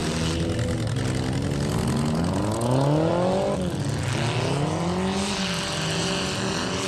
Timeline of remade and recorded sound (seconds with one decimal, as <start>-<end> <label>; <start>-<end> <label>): 0.0-6.9 recorded